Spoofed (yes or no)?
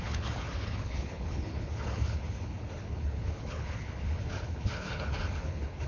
yes